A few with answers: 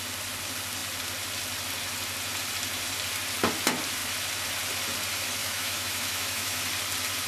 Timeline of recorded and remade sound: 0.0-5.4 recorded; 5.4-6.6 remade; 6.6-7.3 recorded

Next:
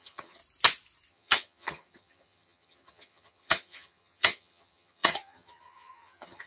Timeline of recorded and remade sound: 0.0-0.4 remade; 0.4-1.1 recorded; 1.1-6.5 remade

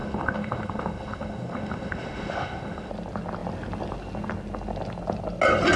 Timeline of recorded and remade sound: 0.0-2.9 remade; 2.9-5.8 recorded

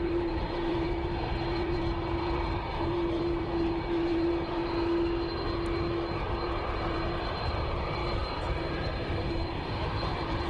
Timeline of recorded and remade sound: 0.0-4.6 remade; 4.6-6.3 recorded; 6.3-10.5 remade